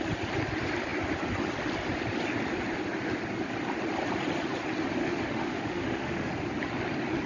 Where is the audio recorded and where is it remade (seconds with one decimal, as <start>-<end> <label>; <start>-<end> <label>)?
0.0-5.0 recorded; 5.0-6.3 remade; 6.3-7.3 recorded